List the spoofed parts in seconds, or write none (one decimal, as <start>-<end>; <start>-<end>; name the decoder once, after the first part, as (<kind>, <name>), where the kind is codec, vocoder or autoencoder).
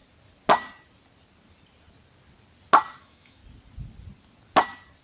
3.0-3.4 (autoencoder, DAC-VAE)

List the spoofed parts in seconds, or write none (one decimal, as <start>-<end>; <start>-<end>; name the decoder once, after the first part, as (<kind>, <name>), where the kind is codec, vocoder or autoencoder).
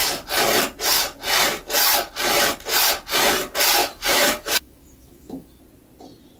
3.8-5.6 (autoencoder, DAC-VAE)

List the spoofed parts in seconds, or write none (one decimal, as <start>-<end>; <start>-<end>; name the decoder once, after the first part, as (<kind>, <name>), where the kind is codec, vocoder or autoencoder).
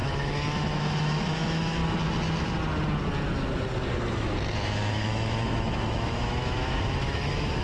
0.0-1.8 (autoencoder, DAC-VAE); 4.9-7.6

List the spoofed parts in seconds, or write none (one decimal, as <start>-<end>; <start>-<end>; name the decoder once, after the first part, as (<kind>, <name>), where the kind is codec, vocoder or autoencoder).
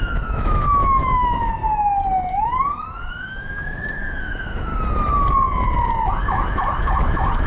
0.0-1.6 (autoencoder, DAC-VAE); 2.3-4.7; 6.1-7.5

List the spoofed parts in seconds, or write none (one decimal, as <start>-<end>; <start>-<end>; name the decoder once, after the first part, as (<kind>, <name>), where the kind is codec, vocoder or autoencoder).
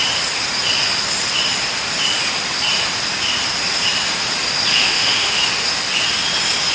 4.7-5.4 (autoencoder, DAC-VAE)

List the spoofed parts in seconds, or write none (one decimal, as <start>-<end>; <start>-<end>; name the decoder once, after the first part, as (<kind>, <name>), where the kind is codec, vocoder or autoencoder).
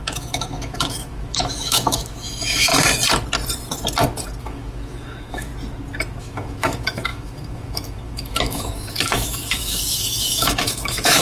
0.0-2.7 (autoencoder, DAC-VAE); 4.4-5.5; 6.2-11.2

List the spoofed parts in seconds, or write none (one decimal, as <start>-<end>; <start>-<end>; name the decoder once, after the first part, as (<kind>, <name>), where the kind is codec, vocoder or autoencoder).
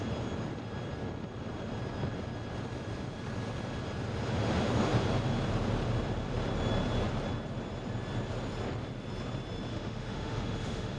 9.7-11.0 (autoencoder, DAC-VAE)